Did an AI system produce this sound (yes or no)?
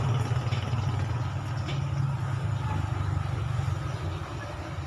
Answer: no